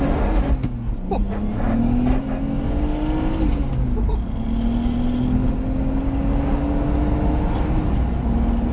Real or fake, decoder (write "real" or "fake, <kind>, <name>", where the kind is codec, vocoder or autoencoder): real